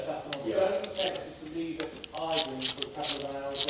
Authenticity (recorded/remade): recorded